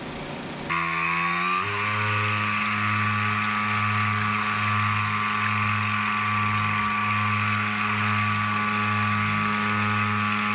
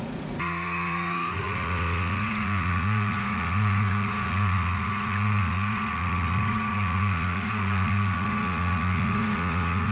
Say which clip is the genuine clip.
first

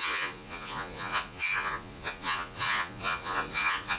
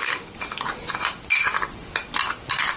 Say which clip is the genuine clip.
second